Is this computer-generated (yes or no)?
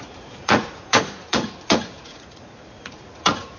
yes